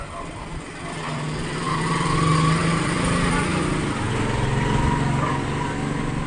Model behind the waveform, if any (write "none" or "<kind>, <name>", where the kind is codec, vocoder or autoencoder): none